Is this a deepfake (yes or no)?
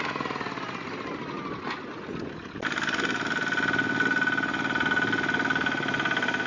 no